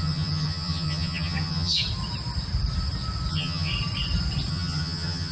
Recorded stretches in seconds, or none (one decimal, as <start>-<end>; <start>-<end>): 1.8-3.3; 3.7-4.5